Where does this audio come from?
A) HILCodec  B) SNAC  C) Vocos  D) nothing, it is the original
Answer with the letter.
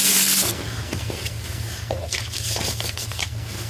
B